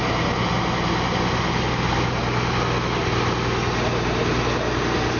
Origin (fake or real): real